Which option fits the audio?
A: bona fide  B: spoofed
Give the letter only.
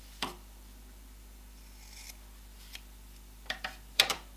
B